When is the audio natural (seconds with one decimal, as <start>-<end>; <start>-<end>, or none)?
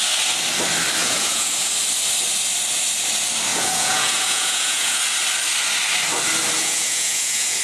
0.0-1.0; 1.7-3.5; 5.0-6.6